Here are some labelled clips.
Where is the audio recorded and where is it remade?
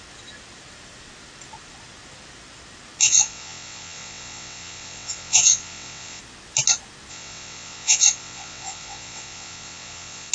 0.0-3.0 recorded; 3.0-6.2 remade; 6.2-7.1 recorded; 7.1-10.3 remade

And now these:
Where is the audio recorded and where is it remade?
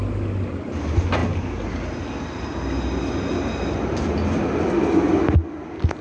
0.0-6.0 recorded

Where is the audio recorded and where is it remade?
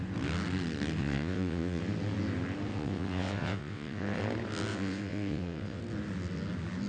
0.0-1.0 recorded; 1.0-1.8 remade; 1.8-2.7 recorded; 2.7-4.2 remade; 4.2-4.7 recorded; 4.7-5.8 remade; 5.8-6.9 recorded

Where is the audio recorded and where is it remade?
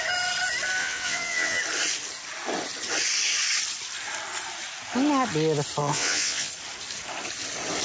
0.0-0.8 recorded; 0.8-1.6 remade; 1.6-5.8 recorded; 5.8-6.5 remade; 6.5-7.8 recorded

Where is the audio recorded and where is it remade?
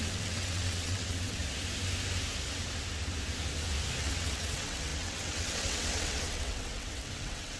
0.0-1.4 remade; 1.4-4.0 recorded; 4.0-7.6 remade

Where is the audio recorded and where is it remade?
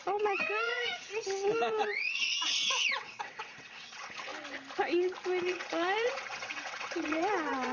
0.0-4.3 remade; 4.3-5.4 recorded; 5.4-7.7 remade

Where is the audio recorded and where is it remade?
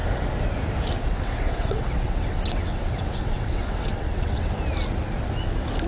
0.0-1.0 recorded; 1.0-4.5 remade; 4.5-5.9 recorded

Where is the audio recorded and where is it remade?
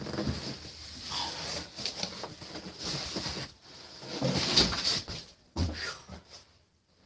0.0-4.5 recorded; 4.5-5.8 remade; 5.8-7.1 recorded